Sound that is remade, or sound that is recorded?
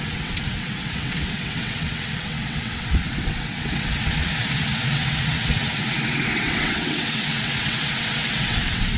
remade